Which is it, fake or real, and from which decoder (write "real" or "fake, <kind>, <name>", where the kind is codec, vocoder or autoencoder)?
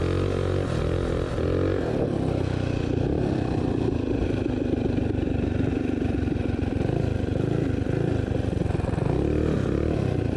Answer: real